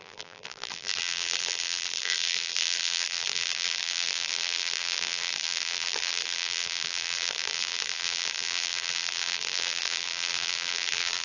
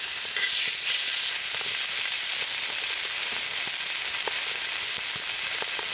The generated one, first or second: first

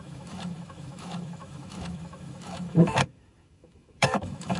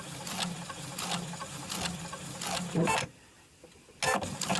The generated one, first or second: first